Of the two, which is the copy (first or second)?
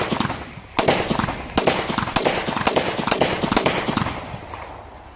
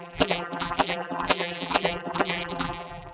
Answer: second